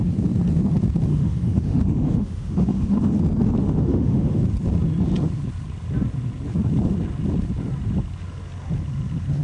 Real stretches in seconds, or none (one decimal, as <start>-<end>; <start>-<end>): 0.0-1.1; 3.2-3.6; 4.4-9.4